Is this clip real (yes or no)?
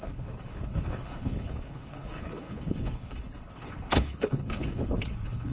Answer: no